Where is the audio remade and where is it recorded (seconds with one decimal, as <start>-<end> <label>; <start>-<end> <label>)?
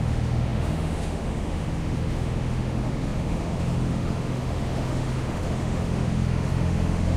0.0-7.2 remade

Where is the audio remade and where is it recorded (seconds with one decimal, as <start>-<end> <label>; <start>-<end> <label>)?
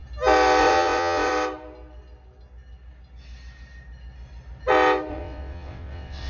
0.0-0.6 recorded; 0.6-1.3 remade; 1.3-5.1 recorded; 5.1-6.3 remade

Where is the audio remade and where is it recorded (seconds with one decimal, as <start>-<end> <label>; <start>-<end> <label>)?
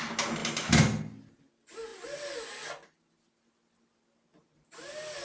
0.0-5.2 recorded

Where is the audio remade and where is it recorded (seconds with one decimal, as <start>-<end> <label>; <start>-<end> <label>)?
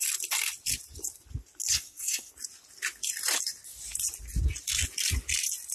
0.0-1.7 recorded; 1.7-2.3 remade; 2.3-5.7 recorded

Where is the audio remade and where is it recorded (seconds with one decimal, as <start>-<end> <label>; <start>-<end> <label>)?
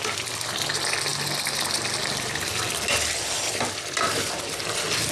0.0-5.1 recorded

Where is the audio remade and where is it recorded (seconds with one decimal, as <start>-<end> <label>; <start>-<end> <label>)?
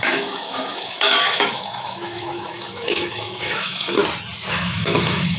0.0-4.0 remade; 4.0-4.5 recorded; 4.5-5.4 remade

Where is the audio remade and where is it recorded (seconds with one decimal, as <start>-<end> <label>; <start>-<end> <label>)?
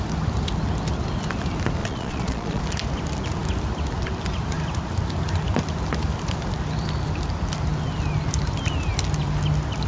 0.0-1.8 recorded; 1.8-2.6 remade; 2.6-9.9 recorded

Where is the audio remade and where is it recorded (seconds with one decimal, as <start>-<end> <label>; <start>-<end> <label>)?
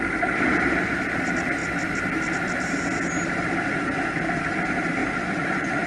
0.0-5.0 recorded; 5.0-5.9 remade